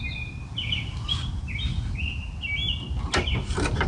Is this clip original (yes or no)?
yes